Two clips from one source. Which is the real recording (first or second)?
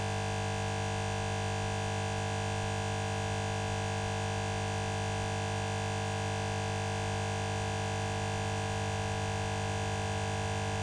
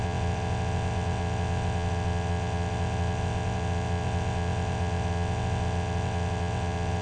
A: first